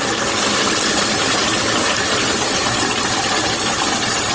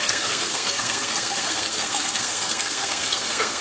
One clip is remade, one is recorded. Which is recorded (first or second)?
first